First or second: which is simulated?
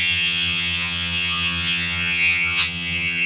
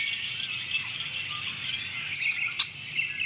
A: first